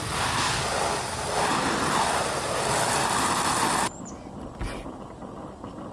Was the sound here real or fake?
real